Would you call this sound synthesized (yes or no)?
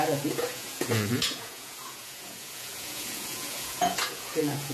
yes